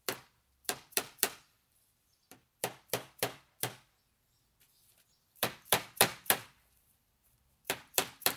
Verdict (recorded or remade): remade